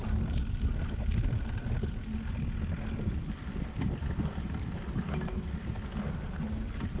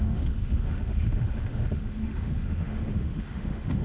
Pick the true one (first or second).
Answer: first